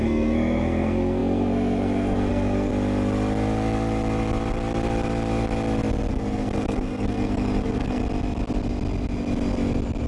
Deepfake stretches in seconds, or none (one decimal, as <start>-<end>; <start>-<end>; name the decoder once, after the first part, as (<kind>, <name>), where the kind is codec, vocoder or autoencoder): 0.0-2.7 (codec, SNAC); 6.1-8.0